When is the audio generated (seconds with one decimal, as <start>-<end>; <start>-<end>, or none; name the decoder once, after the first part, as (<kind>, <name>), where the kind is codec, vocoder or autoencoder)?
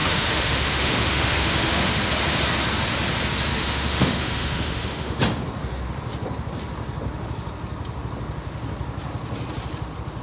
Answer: 0.0-1.9 (autoencoder, DAC-VAE); 3.5-5.2